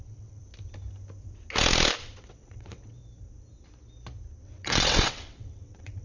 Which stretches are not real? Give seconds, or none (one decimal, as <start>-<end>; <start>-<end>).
0.0-0.4; 2.0-3.0; 4.4-6.0